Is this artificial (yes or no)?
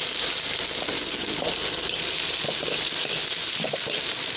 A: no